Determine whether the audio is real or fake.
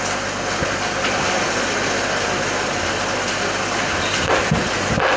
real